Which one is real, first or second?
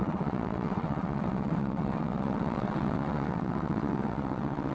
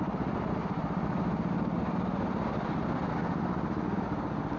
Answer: second